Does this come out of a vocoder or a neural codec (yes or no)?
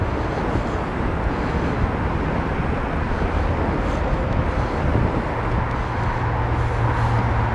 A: no